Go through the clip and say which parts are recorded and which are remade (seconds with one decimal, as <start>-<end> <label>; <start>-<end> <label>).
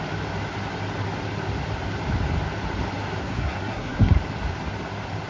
0.0-3.2 recorded; 3.2-4.2 remade; 4.2-5.3 recorded